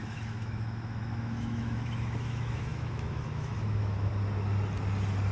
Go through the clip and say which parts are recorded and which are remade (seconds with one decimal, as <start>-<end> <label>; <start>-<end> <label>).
0.0-4.1 remade; 4.1-5.3 recorded